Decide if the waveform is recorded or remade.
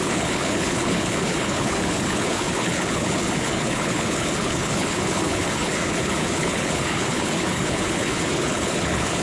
remade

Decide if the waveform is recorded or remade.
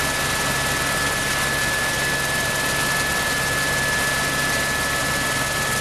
recorded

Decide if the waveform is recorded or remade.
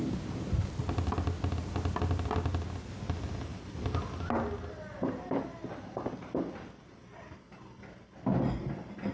recorded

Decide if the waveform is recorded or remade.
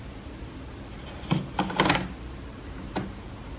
recorded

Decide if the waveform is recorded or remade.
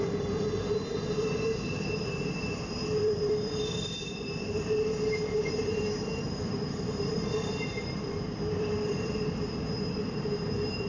remade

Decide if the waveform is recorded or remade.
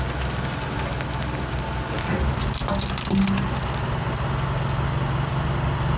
recorded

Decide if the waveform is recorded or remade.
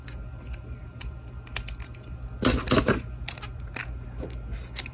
recorded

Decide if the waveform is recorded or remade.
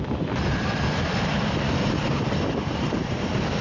recorded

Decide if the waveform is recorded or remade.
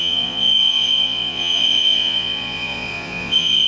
remade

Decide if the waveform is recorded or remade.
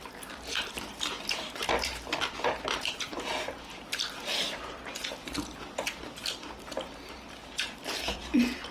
remade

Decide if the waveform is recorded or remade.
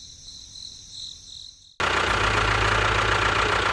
recorded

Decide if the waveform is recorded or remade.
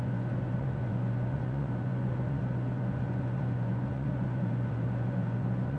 remade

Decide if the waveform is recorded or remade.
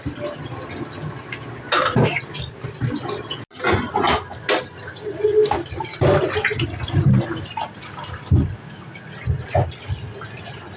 recorded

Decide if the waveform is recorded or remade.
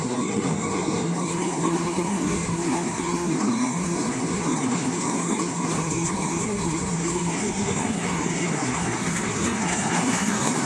remade